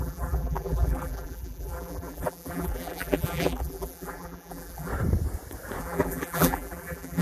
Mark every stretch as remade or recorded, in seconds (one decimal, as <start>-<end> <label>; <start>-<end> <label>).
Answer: 0.0-4.9 remade; 4.9-5.8 recorded; 5.8-7.2 remade